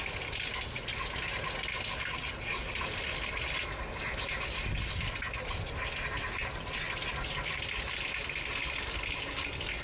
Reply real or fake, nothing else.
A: real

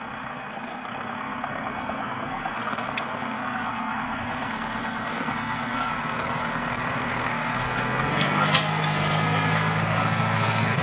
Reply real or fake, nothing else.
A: fake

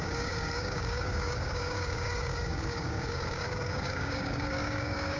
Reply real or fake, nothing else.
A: fake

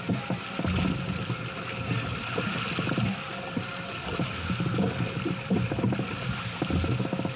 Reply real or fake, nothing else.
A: real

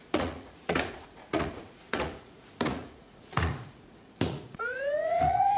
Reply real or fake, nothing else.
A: fake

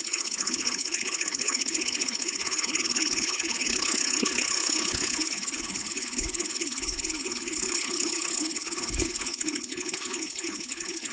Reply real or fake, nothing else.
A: fake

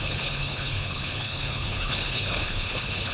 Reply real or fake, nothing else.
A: fake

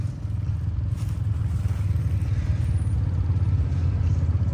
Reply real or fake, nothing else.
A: real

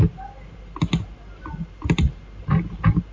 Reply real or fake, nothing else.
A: real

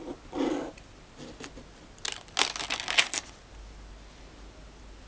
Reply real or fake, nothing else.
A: real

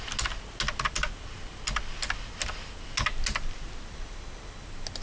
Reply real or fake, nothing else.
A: real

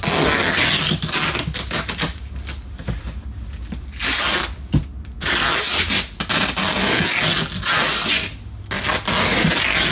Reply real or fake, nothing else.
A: real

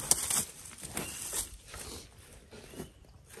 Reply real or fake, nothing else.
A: real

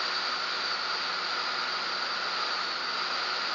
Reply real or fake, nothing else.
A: real